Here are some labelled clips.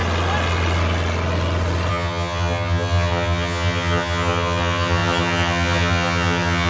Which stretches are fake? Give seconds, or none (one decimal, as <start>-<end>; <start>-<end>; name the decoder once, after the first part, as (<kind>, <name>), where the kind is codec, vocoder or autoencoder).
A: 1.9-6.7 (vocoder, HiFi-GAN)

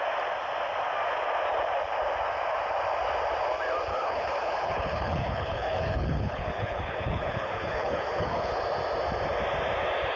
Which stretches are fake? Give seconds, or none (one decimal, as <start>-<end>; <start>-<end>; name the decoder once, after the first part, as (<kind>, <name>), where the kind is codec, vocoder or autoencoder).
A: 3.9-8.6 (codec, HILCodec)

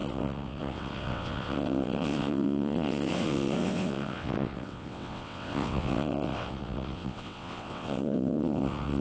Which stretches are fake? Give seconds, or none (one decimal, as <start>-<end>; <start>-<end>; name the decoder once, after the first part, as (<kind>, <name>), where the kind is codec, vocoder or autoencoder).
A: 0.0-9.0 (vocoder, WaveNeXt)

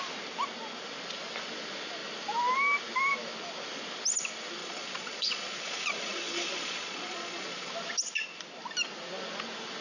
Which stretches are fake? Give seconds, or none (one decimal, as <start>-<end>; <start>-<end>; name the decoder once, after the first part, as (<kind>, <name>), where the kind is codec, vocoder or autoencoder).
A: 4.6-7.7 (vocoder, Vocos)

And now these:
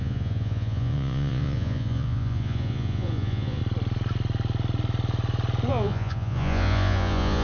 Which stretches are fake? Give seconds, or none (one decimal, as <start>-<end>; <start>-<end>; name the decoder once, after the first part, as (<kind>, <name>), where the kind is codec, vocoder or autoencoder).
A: 0.0-3.6 (vocoder, Vocos); 5.7-7.4

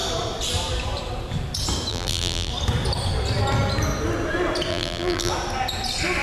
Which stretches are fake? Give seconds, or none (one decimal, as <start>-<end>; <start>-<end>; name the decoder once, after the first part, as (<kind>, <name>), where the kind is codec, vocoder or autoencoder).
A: 1.9-2.5 (vocoder, BigVGAN v2); 4.7-5.3